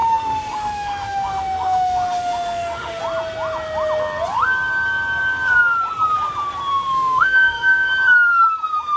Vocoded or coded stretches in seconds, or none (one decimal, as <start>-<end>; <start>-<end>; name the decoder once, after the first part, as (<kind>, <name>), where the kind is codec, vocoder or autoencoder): 0.0-3.0 (autoencoder, DAC-VAE); 6.7-7.9